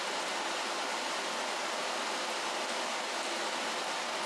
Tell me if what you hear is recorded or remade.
recorded